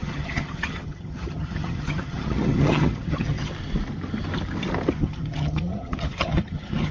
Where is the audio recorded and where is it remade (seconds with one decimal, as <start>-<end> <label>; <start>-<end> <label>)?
0.0-3.5 remade; 3.5-4.9 recorded; 4.9-6.9 remade